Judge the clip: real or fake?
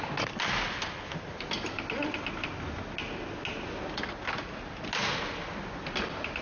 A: real